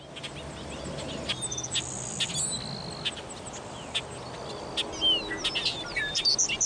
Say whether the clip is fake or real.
real